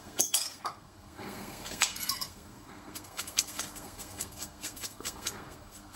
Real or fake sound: fake